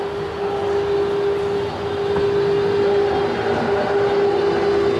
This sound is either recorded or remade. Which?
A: recorded